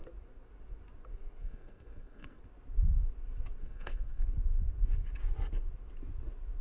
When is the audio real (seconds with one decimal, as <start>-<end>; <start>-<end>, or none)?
0.0-1.4; 2.4-3.6; 4.2-6.6